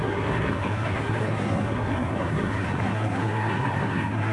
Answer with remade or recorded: remade